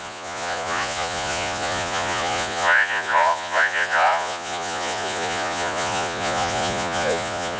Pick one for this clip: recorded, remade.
remade